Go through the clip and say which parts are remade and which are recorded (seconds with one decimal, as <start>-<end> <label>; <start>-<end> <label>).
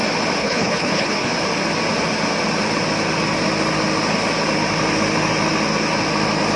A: 0.0-0.4 recorded; 0.4-1.3 remade; 1.3-6.6 recorded